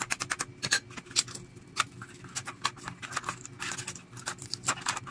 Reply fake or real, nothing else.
real